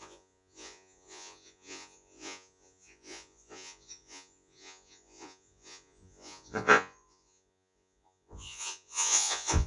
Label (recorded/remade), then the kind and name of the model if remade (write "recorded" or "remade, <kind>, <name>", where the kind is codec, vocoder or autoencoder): remade, vocoder, Vocos